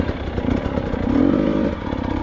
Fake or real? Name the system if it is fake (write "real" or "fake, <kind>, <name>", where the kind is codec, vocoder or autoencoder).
fake, vocoder, BigVGAN v2